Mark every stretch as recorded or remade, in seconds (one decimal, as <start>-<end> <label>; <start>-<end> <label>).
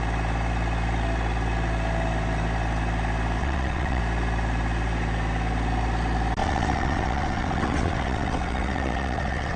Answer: 0.0-3.4 recorded; 3.4-4.0 remade; 4.0-6.4 recorded; 6.4-9.6 remade